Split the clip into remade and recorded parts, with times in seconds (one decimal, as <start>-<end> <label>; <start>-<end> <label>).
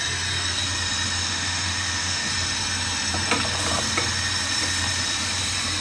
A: 0.0-1.2 recorded; 1.2-2.3 remade; 2.3-5.8 recorded